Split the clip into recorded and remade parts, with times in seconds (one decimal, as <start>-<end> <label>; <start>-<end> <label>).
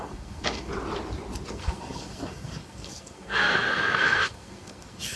0.0-0.7 remade; 0.7-1.5 recorded; 1.5-5.2 remade